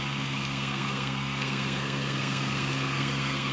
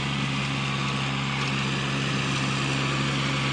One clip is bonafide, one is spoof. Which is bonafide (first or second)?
second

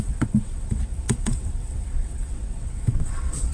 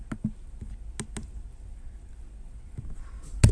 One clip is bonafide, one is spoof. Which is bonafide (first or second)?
second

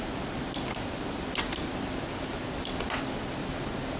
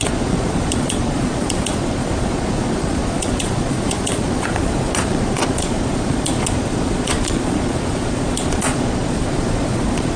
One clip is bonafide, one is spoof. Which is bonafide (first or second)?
first